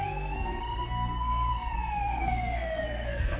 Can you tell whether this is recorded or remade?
remade